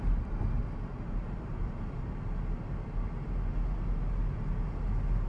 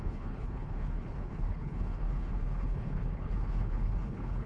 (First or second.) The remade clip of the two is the second